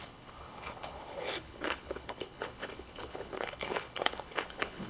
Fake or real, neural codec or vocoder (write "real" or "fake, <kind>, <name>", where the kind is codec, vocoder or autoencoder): fake, codec, HILCodec